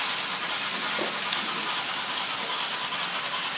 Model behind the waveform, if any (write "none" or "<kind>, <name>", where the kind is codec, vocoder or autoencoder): none